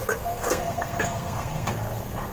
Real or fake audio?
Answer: fake